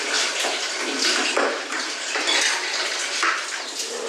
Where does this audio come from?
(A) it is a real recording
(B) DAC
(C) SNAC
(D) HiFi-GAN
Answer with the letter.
A